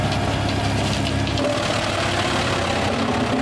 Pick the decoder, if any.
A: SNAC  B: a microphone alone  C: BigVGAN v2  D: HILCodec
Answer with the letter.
B